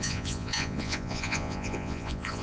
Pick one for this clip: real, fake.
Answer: fake